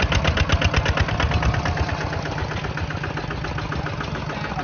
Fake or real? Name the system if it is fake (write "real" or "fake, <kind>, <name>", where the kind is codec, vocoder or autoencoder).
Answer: real